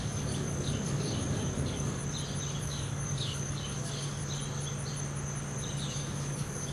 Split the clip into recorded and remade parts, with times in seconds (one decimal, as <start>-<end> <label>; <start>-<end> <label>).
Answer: 0.0-2.0 remade; 2.0-2.6 recorded; 2.6-4.2 remade; 4.2-5.9 recorded; 5.9-6.7 remade